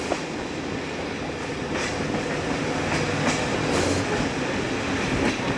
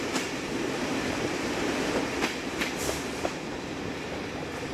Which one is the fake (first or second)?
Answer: second